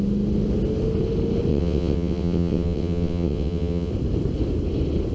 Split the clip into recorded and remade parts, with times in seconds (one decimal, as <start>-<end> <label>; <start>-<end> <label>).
0.0-1.5 recorded; 1.5-3.9 remade; 3.9-5.1 recorded